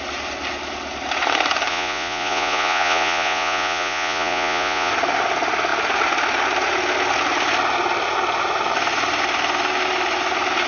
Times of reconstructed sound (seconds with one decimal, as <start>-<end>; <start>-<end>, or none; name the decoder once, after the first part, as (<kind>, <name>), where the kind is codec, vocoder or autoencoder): 1.7-4.9 (vocoder, Vocos)